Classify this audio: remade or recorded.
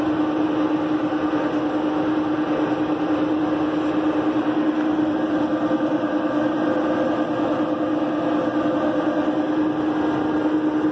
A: recorded